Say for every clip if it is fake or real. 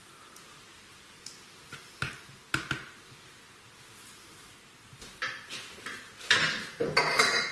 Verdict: real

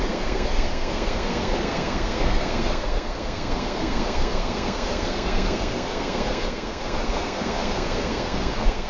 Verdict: fake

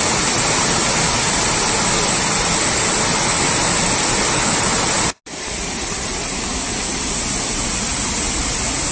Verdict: real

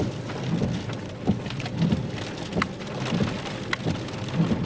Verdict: real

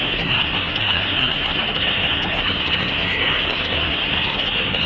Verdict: fake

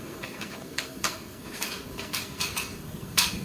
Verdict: fake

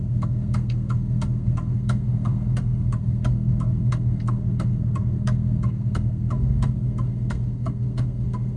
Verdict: fake